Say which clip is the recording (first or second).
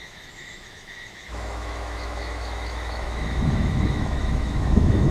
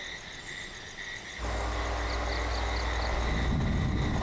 second